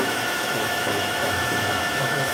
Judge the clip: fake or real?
fake